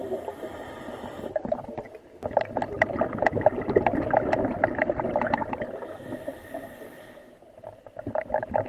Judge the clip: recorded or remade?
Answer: recorded